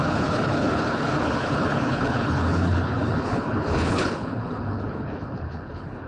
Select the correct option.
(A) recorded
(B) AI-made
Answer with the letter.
B